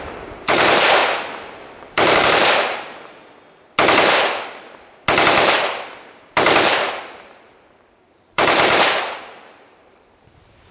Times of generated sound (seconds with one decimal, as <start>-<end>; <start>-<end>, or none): 0.0-1.0; 1.6-3.2; 7.0-10.7